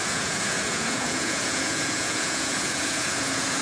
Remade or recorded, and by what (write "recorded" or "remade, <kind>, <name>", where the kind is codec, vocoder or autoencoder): remade, vocoder, Vocos